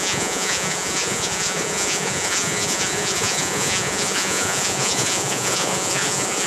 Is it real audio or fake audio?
fake